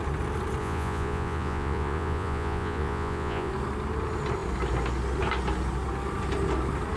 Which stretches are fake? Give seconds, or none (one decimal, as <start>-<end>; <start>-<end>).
0.6-3.5